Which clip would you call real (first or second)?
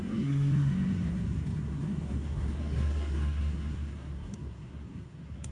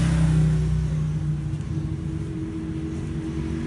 second